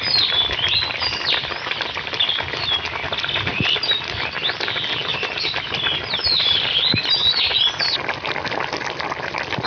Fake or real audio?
real